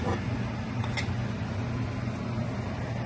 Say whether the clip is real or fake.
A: real